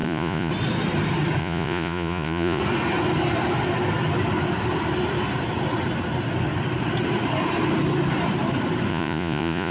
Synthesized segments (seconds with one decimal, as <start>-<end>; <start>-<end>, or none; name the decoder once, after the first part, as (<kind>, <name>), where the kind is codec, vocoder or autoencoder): 0.0-0.5 (vocoder, Vocos); 1.4-2.6; 8.9-9.7